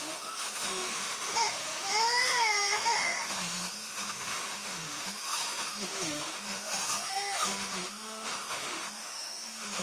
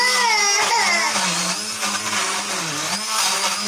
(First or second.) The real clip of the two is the second